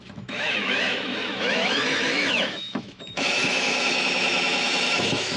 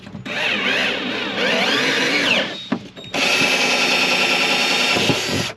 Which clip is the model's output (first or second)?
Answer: first